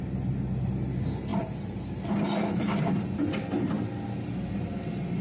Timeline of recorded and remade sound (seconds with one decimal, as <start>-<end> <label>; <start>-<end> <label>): 0.0-5.2 recorded